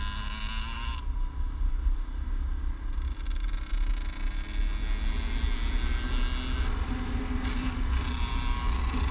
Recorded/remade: recorded